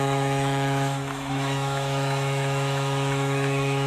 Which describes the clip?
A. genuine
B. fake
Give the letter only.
B